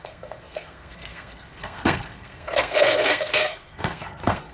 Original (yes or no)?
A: no